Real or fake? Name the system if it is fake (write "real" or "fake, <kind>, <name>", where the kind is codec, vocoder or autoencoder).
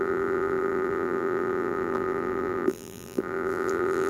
fake, vocoder, BigVGAN v2